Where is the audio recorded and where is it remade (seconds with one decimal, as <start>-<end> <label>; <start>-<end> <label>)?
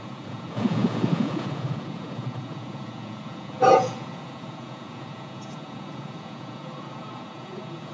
0.0-7.9 remade